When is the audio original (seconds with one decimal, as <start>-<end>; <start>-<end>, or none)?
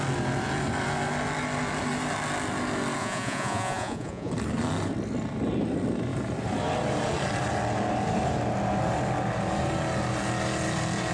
0.0-3.0; 4.3-11.1